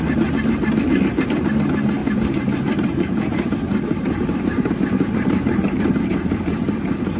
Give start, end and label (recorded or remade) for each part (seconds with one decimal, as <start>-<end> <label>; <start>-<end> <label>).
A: 0.0-2.0 recorded; 2.0-5.8 remade; 5.8-7.2 recorded